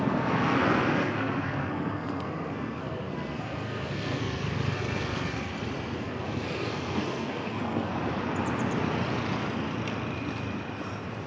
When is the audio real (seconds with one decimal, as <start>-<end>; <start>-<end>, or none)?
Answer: 5.5-6.0; 7.9-11.3